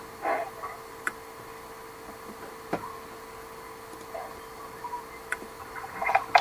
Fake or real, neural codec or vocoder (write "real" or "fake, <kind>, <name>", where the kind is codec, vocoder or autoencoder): real